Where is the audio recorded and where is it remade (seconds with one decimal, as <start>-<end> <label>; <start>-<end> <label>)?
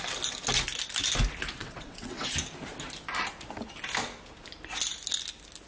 0.0-1.6 recorded; 1.6-2.3 remade; 2.3-5.7 recorded